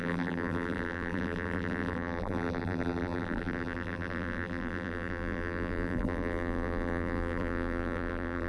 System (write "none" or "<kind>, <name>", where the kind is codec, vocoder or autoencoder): vocoder, BigVGAN v2